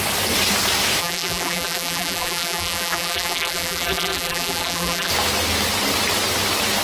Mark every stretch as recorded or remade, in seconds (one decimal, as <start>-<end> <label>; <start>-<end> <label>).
0.0-1.0 recorded; 1.0-5.1 remade; 5.1-6.8 recorded